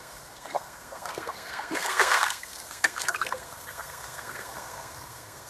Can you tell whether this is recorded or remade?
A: remade